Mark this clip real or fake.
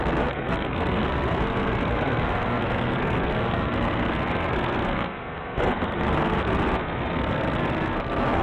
fake